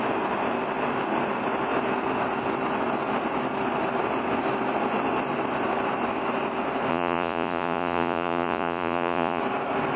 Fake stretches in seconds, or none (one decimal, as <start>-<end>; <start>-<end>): 6.9-9.4